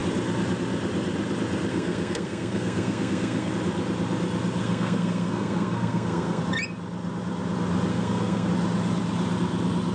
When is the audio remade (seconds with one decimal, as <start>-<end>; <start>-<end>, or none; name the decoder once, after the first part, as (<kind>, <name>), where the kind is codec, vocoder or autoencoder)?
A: 1.7-3.5 (codec, SNAC); 4.6-6.4; 7.9-8.5